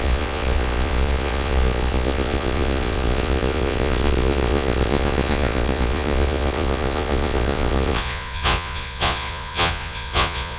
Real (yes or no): no